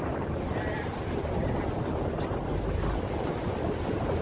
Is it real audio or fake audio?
real